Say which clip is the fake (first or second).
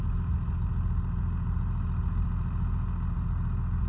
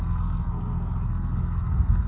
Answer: second